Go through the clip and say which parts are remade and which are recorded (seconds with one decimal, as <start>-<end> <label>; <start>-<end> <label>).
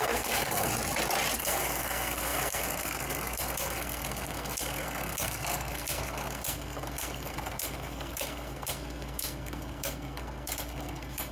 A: 0.0-0.7 remade; 0.7-1.4 recorded; 1.4-11.3 remade